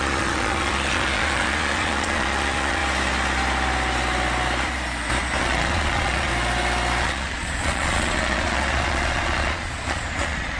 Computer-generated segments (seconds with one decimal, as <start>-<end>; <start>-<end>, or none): 0.0-2.8; 5.4-6.3; 7.0-10.6